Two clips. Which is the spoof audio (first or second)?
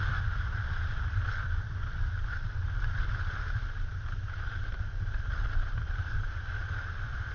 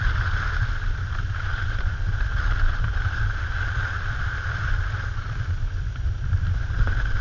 first